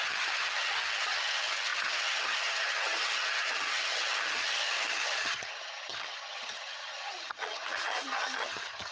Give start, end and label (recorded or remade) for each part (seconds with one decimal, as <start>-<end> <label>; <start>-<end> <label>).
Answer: 0.0-8.9 remade